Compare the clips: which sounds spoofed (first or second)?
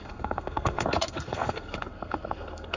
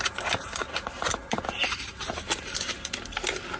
first